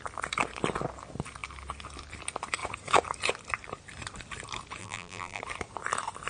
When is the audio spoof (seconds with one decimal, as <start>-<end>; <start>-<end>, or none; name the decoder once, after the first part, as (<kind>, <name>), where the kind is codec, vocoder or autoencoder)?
4.8-5.4 (vocoder, BigVGAN v2)